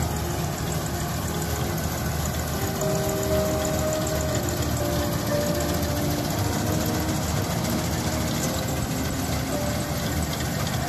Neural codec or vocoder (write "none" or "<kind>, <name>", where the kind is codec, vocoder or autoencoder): none